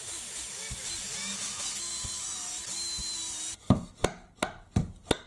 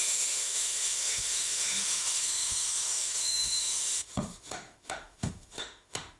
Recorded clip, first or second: first